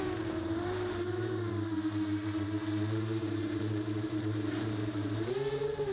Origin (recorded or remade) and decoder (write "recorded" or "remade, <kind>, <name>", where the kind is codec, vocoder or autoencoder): remade, vocoder, BigVGAN v2